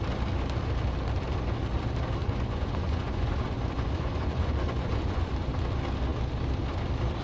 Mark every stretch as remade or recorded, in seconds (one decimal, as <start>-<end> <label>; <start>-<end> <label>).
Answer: 0.0-2.2 recorded; 2.2-5.3 remade; 5.3-7.2 recorded